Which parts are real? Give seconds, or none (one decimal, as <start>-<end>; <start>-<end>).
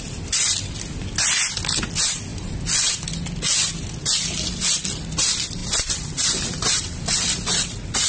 0.0-2.3; 2.9-5.6